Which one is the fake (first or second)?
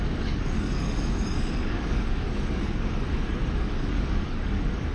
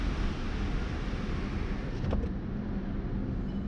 first